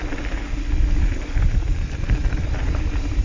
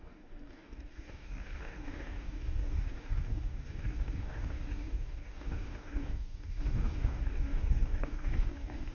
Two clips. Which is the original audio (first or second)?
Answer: first